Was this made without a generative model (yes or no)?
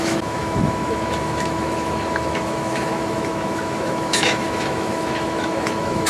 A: no